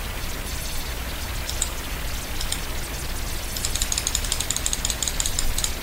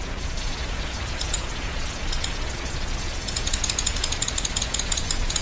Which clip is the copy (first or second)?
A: second